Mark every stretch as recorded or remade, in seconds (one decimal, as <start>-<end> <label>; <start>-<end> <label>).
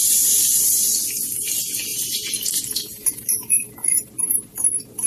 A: 0.0-1.9 recorded; 1.9-4.1 remade; 4.1-5.1 recorded